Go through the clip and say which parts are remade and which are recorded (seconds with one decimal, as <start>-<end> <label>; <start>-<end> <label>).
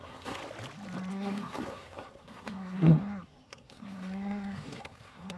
0.0-0.4 remade; 0.4-1.1 recorded; 1.1-5.4 remade